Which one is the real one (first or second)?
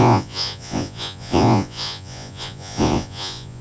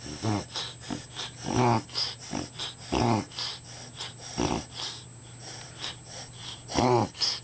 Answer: second